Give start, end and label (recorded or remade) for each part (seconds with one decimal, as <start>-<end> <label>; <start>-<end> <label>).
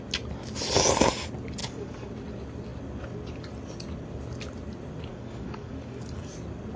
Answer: 0.0-1.6 recorded; 1.6-2.1 remade; 2.1-5.1 recorded; 5.1-6.3 remade; 6.3-6.8 recorded